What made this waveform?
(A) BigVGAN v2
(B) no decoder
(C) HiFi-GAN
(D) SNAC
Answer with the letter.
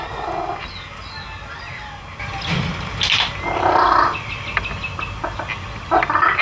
B